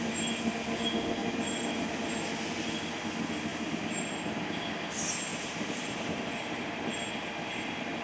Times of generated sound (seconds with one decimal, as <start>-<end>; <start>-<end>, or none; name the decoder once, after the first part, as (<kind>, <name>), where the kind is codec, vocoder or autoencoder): 1.2-1.9 (vocoder, BigVGAN v2); 5.3-6.8